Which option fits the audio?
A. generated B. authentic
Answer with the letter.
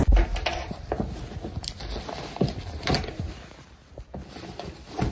B